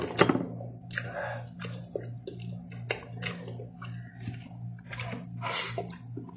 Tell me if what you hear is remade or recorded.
recorded